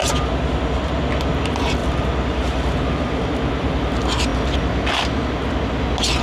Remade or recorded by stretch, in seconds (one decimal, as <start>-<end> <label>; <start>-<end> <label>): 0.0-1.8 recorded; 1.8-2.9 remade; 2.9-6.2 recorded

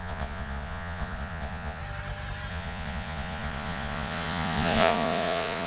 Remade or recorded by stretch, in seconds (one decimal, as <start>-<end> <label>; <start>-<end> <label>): 0.0-1.8 remade; 1.8-2.5 recorded; 2.5-5.7 remade

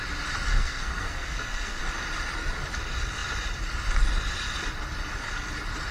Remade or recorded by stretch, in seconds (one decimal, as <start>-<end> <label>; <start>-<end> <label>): 0.0-0.5 recorded; 0.5-1.8 remade; 1.8-5.9 recorded

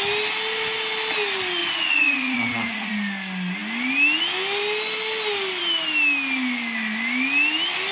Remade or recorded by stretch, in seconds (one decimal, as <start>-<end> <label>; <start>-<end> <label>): 0.0-1.6 recorded; 1.6-2.9 remade; 2.9-7.9 recorded

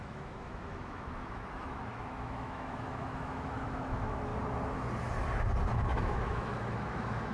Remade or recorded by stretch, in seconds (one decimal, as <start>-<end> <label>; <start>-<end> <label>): 0.0-4.3 remade; 4.3-5.7 recorded; 5.7-7.3 remade

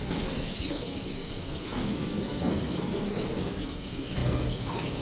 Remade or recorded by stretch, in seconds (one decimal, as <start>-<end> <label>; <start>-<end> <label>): 0.0-5.0 remade

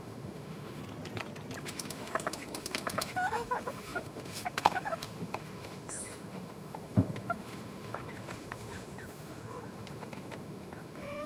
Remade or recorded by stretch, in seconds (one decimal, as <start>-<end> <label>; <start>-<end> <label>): 0.0-0.8 remade; 0.8-1.6 recorded; 1.6-11.3 remade